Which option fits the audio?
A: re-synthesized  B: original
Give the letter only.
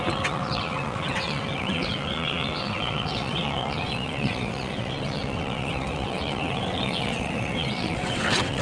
A